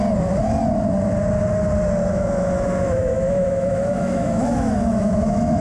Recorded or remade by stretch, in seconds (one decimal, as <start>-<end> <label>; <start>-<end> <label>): 0.0-2.1 recorded; 2.1-5.6 remade